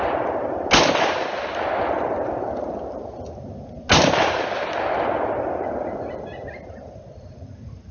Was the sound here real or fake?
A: real